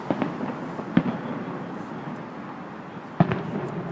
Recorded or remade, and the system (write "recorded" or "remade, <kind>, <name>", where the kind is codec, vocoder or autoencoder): recorded